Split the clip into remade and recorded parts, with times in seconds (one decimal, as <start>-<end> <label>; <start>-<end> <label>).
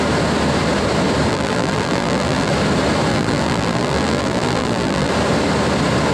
0.0-1.3 recorded; 1.3-2.5 remade; 2.5-3.1 recorded; 3.1-5.1 remade; 5.1-6.1 recorded